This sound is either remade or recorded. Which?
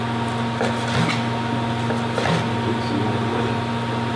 recorded